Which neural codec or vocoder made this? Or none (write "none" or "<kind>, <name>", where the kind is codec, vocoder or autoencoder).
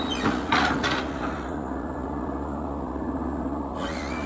vocoder, Vocos